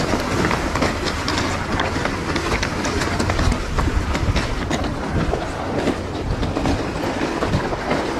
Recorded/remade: recorded